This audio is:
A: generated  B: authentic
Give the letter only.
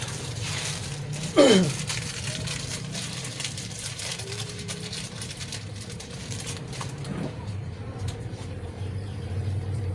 A